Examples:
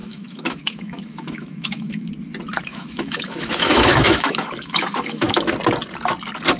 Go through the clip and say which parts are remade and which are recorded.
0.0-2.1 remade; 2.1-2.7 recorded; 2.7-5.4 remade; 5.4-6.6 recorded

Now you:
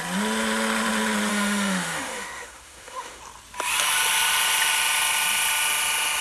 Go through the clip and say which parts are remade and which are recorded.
0.0-1.3 recorded; 1.3-3.2 remade; 3.2-6.2 recorded

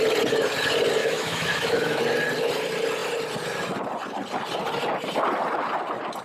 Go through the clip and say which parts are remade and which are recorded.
0.0-1.0 recorded; 1.0-2.0 remade; 2.0-6.2 recorded

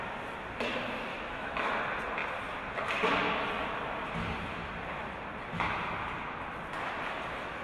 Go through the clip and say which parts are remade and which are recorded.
0.0-1.1 recorded; 1.1-1.8 remade; 1.8-7.6 recorded

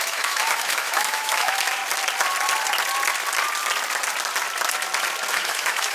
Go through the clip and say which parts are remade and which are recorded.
0.0-1.8 remade; 1.8-5.3 recorded; 5.3-5.9 remade